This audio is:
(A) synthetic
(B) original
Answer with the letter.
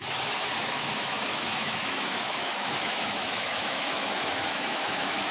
A